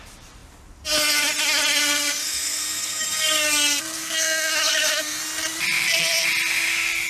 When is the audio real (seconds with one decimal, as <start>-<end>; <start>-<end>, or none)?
0.0-1.8; 5.2-7.1